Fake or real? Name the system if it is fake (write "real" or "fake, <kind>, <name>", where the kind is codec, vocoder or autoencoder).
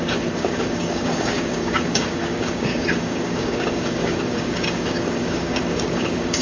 fake, codec, DAC